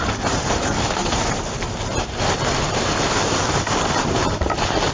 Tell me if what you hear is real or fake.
fake